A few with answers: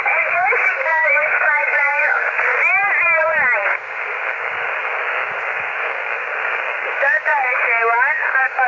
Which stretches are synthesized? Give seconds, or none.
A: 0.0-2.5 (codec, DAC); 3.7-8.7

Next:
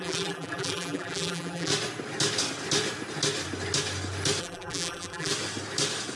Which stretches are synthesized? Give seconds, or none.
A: 0.0-1.7 (vocoder, BigVGAN v2); 4.4-5.3

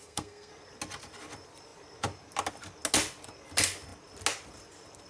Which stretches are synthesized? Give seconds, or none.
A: 0.0-0.5 (codec, SNAC)

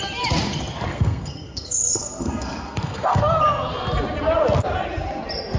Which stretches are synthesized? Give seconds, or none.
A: 0.9-3.2 (codec, SNAC)